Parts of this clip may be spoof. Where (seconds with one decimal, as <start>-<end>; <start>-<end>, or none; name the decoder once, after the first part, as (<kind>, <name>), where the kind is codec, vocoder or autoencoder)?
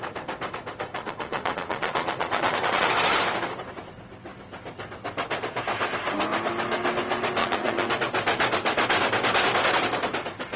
0.9-2.9 (vocoder, Vocos); 7.4-7.9